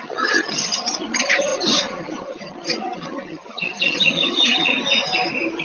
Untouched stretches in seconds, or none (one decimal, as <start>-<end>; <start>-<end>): 4.7-5.6